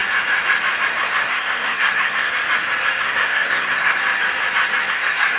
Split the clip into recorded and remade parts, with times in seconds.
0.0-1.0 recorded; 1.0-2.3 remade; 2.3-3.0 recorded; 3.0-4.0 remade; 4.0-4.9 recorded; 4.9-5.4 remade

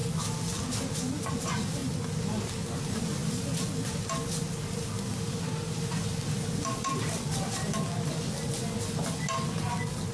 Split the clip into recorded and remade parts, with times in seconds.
0.0-10.1 recorded